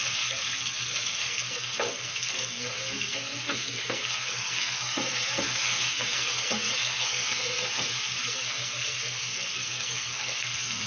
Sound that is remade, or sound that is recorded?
remade